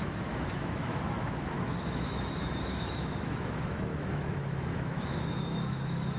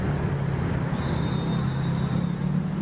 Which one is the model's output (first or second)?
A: first